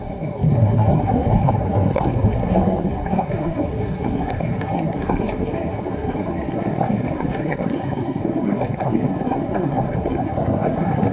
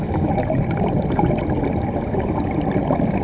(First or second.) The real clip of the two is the second